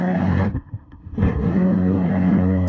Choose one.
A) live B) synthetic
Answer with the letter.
B